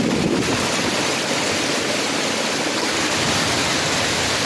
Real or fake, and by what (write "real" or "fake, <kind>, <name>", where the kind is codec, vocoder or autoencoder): real